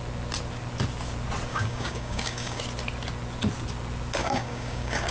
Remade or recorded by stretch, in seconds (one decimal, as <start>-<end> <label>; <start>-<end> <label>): 0.0-1.5 recorded; 1.5-2.6 remade; 2.6-4.2 recorded; 4.2-5.1 remade